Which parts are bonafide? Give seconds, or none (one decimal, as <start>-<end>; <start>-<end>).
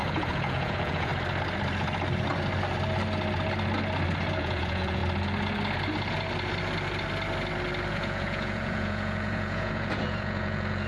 1.1-4.4; 5.0-7.9